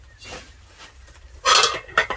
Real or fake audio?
real